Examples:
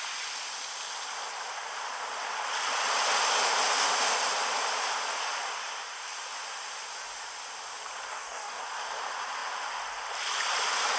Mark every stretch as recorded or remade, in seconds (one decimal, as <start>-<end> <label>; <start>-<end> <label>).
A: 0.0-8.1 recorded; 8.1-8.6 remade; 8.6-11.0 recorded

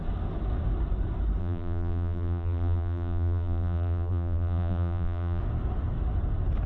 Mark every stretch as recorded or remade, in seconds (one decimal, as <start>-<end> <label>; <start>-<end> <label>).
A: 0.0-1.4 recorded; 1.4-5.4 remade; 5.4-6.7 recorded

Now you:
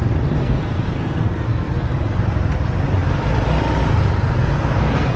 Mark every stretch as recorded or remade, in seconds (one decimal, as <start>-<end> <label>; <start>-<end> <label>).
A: 0.0-0.4 recorded; 0.4-1.9 remade; 1.9-4.4 recorded; 4.4-5.2 remade